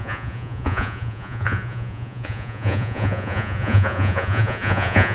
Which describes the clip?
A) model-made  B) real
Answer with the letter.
A